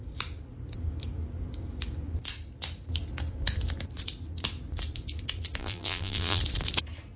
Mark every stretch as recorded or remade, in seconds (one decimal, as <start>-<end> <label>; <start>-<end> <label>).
0.0-5.6 recorded; 5.6-6.4 remade; 6.4-7.2 recorded